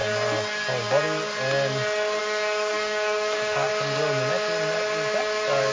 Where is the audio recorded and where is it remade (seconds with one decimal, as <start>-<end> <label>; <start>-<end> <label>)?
0.0-2.2 recorded; 2.2-3.7 remade; 3.7-5.2 recorded; 5.2-5.7 remade